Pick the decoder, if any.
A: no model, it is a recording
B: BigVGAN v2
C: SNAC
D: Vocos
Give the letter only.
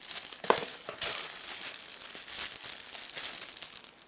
A